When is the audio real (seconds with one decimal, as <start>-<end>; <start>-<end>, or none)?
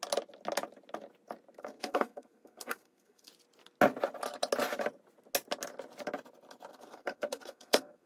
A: 0.0-1.6; 3.3-6.7